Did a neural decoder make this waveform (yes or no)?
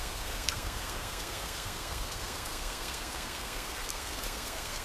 yes